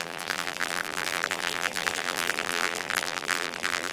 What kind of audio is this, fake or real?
fake